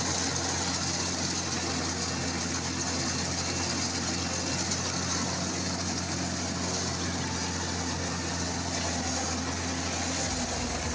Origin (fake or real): real